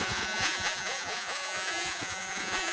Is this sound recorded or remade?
remade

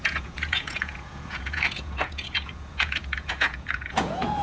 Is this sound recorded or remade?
remade